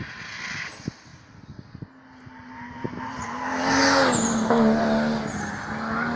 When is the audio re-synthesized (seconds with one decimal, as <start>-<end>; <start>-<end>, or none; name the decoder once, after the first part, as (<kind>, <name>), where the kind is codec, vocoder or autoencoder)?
none